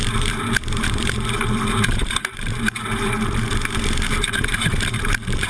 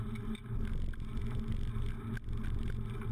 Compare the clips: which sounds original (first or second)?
second